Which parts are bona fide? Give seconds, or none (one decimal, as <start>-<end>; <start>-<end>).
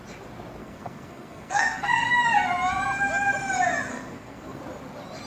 0.0-0.6; 2.1-3.9; 4.6-5.3